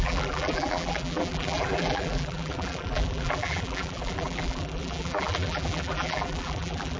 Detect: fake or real fake